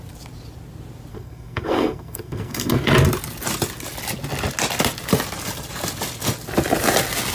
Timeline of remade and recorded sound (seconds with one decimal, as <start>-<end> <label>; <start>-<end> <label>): 0.0-1.1 recorded; 1.1-2.9 remade; 2.9-7.3 recorded